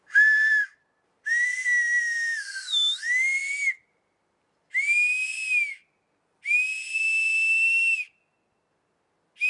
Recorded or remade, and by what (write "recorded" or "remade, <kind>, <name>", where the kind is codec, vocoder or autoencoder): recorded